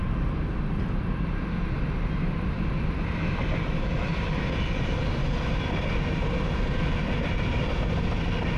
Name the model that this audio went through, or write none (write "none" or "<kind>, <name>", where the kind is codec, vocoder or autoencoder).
none